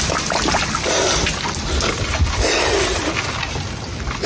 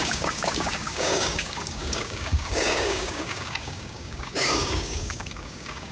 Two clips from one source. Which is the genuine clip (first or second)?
first